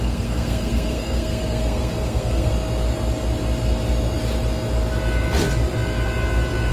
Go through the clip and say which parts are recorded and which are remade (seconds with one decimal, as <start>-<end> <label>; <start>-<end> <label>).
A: 0.0-2.5 remade; 2.5-6.7 recorded